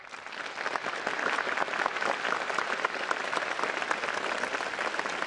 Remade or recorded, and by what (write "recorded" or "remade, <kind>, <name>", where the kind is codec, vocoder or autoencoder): recorded